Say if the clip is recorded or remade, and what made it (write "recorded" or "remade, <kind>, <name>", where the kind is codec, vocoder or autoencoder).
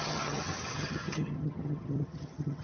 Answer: remade, vocoder, HiFi-GAN